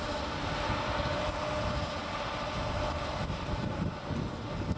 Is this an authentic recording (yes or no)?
yes